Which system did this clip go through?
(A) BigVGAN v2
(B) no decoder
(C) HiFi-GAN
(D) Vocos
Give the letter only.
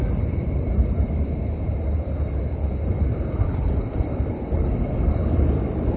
B